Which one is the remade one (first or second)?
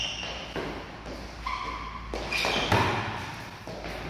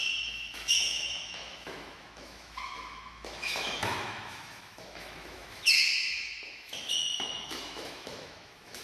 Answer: second